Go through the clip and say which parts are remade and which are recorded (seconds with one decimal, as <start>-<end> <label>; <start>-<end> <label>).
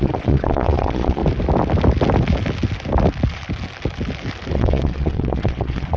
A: 0.0-1.2 remade; 1.2-4.5 recorded; 4.5-6.0 remade